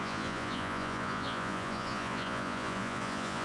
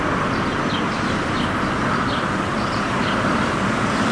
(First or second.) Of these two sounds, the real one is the second